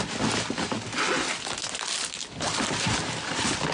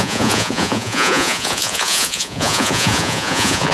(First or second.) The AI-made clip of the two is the second